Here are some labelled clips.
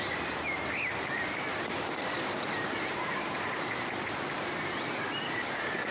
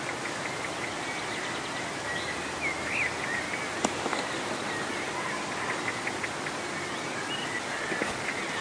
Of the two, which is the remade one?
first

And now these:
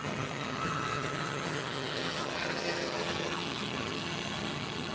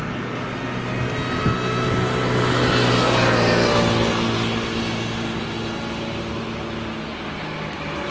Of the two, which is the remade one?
first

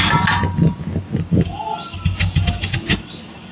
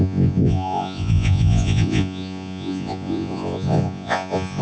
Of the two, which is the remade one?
second